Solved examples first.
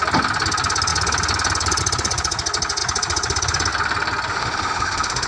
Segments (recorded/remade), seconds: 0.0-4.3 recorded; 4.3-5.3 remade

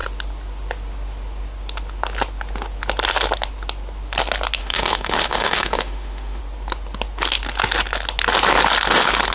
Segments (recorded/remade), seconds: 0.0-4.6 recorded; 4.6-6.4 remade; 6.4-9.3 recorded